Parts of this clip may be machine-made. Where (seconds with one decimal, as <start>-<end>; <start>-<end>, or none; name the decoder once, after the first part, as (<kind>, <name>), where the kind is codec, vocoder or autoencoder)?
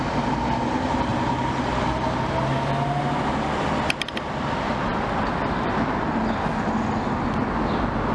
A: none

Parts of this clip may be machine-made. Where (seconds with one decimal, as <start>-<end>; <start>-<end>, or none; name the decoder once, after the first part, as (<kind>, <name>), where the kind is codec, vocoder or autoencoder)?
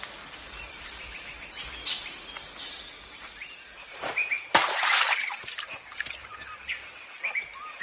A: none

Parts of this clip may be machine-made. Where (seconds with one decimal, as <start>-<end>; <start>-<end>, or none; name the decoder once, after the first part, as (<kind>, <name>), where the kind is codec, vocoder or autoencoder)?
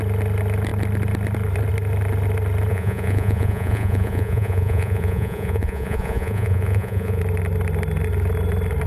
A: 2.7-7.2 (vocoder, Vocos)